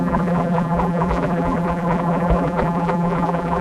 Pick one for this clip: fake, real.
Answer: fake